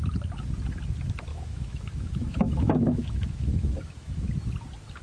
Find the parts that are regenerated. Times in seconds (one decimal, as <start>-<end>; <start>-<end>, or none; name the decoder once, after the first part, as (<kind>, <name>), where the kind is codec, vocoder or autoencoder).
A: 1.3-4.3 (autoencoder, DAC-VAE)